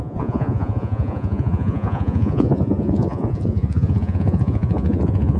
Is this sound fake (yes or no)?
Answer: yes